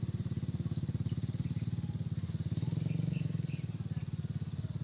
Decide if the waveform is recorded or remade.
recorded